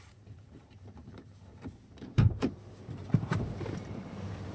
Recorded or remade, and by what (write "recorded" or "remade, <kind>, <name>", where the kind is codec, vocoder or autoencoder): remade, vocoder, BigVGAN v2